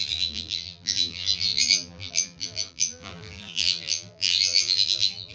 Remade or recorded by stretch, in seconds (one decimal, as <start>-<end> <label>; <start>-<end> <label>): 0.0-5.3 remade